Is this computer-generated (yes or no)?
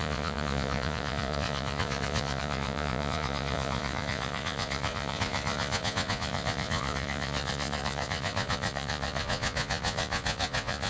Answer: yes